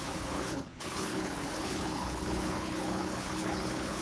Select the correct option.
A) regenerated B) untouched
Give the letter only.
A